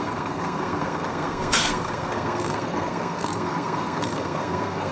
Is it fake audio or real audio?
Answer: fake